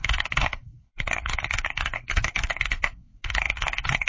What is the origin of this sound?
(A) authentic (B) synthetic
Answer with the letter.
B